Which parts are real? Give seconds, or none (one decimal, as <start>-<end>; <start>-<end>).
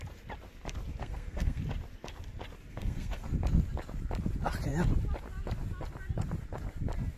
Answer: 0.0-1.0; 1.6-2.7; 3.3-7.2